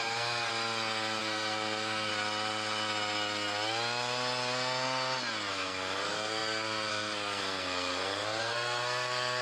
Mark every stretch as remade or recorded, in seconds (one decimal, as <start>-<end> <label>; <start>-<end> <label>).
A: 0.0-0.5 remade; 0.5-1.2 recorded; 1.2-2.1 remade; 2.1-5.5 recorded; 5.5-9.4 remade